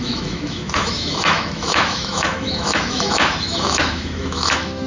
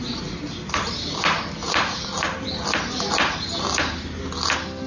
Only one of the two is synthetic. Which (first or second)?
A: first